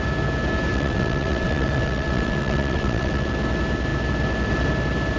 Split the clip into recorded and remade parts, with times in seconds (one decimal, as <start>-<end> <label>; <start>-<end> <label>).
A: 0.0-0.7 recorded; 0.7-3.3 remade; 3.3-5.2 recorded